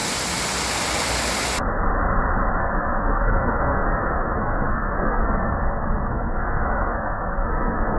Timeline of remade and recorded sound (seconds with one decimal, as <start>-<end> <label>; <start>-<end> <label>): 0.0-2.6 recorded; 2.6-8.0 remade